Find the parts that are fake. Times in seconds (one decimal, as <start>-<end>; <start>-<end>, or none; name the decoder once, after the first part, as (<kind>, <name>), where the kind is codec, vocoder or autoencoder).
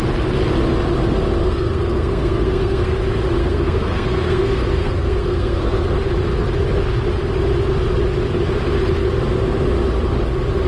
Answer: 1.4-2.9 (codec, SNAC); 3.4-5.9